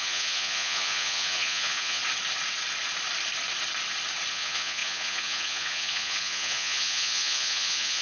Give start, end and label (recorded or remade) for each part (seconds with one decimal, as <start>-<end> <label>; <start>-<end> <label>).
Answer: 0.0-2.0 remade; 2.0-4.3 recorded; 4.3-8.0 remade